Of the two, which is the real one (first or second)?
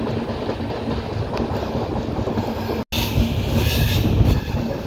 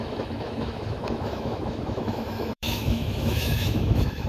first